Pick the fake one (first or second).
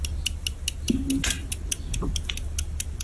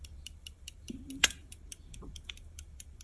second